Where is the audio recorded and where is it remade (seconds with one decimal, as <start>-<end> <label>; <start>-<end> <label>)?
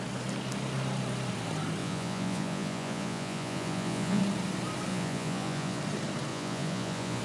0.0-1.8 recorded; 1.8-4.2 remade; 4.2-4.9 recorded; 4.9-5.8 remade; 5.8-6.3 recorded; 6.3-7.2 remade